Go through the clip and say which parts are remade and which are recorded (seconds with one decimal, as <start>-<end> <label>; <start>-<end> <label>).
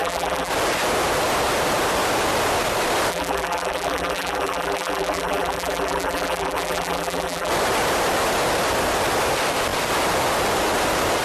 0.0-0.5 remade; 0.5-3.1 recorded; 3.1-7.5 remade; 7.5-11.2 recorded